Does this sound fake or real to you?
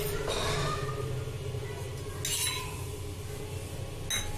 real